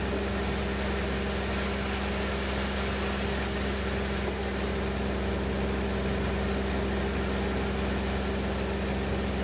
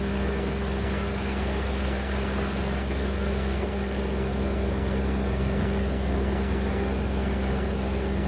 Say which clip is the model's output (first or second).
second